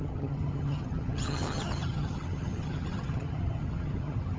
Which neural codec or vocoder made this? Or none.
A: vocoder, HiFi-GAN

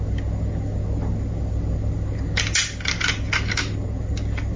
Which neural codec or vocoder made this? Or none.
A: none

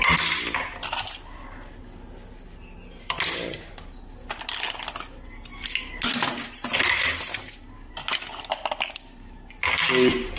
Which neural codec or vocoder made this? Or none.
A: none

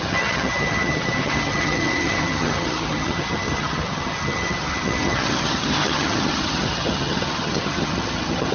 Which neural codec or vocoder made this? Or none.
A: vocoder, HiFi-GAN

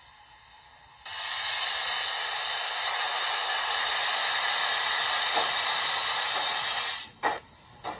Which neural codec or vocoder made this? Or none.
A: none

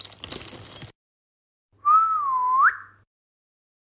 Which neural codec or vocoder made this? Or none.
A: none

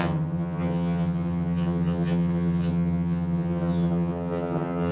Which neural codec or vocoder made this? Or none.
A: vocoder, HiFi-GAN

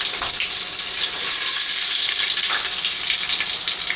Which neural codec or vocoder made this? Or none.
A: none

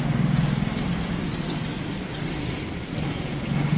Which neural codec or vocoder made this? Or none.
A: none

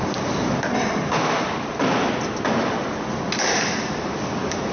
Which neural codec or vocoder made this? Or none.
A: none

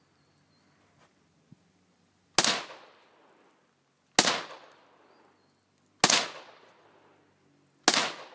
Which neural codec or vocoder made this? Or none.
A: none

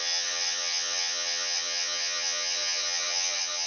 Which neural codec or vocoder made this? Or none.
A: vocoder, HiFi-GAN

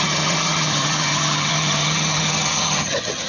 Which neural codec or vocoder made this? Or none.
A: vocoder, HiFi-GAN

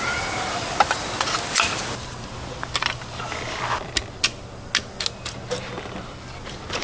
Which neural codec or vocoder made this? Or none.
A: none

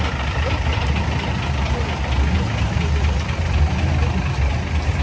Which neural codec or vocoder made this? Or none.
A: none